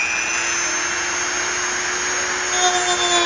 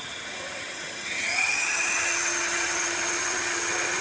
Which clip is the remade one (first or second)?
second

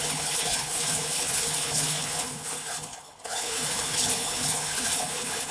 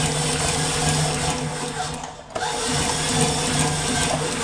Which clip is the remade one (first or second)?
first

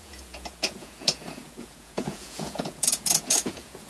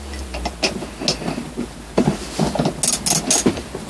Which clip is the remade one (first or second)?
first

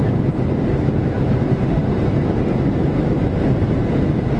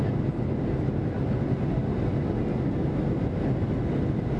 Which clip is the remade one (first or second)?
first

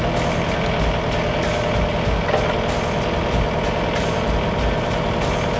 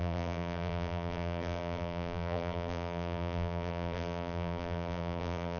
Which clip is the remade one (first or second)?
second